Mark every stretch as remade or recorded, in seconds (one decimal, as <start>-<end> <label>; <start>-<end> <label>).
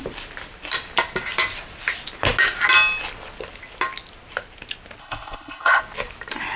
0.0-5.0 recorded; 5.0-5.8 remade; 5.8-6.6 recorded